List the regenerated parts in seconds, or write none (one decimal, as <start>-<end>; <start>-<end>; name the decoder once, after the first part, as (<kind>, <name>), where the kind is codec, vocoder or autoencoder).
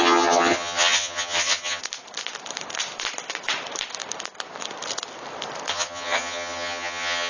0.0-1.8 (vocoder, HiFi-GAN); 5.7-7.3